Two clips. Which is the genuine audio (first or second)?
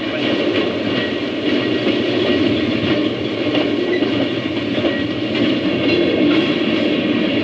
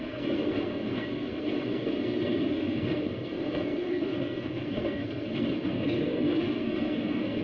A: first